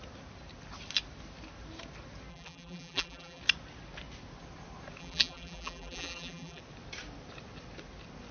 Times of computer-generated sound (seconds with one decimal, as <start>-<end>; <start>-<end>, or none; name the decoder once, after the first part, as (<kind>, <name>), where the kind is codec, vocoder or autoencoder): 2.3-3.4 (vocoder, BigVGAN v2); 5.0-6.6